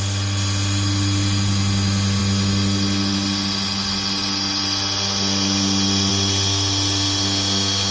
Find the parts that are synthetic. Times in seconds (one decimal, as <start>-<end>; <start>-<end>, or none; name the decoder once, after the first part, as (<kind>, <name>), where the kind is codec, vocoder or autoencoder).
none